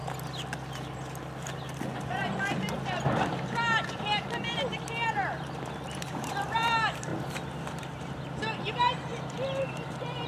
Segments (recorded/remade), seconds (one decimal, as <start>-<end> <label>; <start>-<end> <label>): 0.0-2.6 recorded; 2.6-9.1 remade; 9.1-9.6 recorded; 9.6-10.3 remade